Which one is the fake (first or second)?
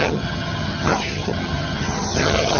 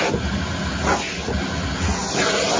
first